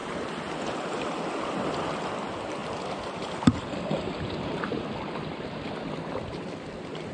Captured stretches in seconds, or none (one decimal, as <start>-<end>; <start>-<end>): 0.0-7.1

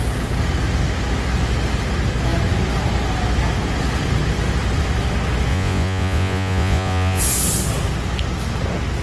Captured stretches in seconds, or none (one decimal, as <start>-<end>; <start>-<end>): 0.0-5.5; 7.2-9.0

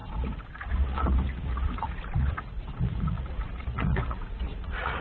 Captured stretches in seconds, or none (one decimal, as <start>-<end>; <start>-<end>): none

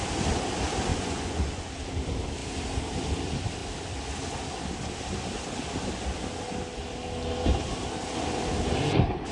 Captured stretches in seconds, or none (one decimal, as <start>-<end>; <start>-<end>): 0.0-0.9; 1.7-9.3

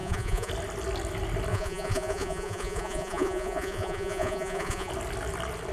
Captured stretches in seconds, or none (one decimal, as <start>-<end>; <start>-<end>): 0.5-1.5; 4.9-5.7